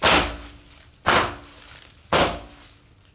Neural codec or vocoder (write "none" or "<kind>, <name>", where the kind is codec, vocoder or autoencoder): none